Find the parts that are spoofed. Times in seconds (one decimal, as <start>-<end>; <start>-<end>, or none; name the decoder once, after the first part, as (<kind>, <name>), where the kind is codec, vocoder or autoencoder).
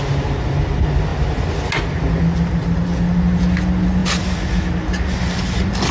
none